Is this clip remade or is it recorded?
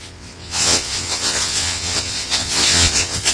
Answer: remade